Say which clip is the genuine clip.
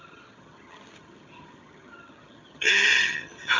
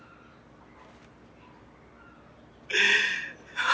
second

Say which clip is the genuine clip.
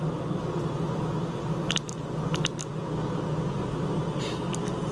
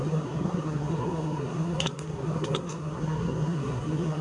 first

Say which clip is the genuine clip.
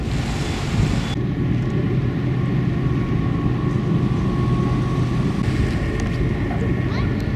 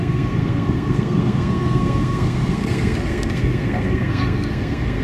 first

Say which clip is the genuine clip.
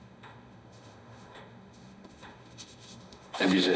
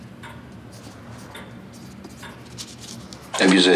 second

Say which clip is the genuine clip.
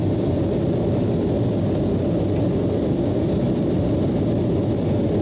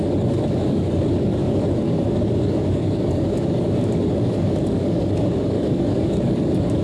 first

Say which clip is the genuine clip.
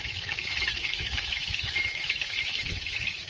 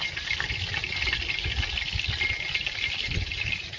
second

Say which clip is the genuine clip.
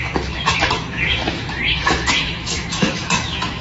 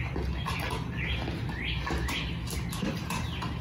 second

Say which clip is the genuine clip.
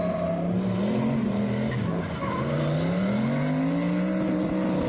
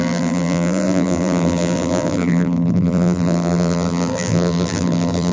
first